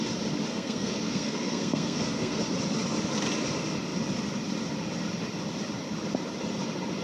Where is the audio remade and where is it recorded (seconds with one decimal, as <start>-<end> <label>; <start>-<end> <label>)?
0.0-0.5 recorded; 0.5-2.4 remade; 2.4-7.0 recorded